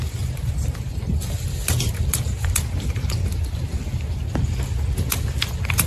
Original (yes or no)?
yes